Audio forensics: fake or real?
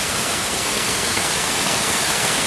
fake